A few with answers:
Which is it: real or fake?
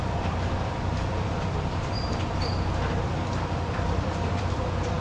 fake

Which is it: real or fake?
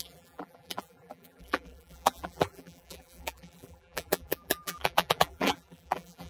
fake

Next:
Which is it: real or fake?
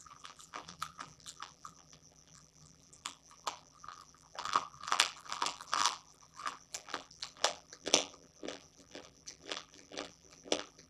fake